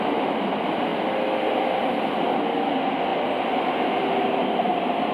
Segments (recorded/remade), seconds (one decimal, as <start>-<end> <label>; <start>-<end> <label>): 0.0-0.9 recorded; 0.9-1.9 remade; 1.9-5.1 recorded